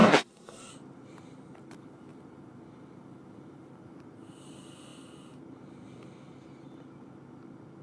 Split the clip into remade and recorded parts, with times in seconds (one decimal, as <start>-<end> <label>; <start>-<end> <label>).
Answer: 0.0-0.7 remade; 0.7-7.8 recorded